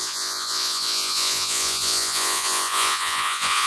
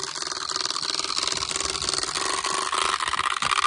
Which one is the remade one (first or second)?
first